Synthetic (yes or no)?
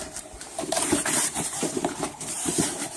yes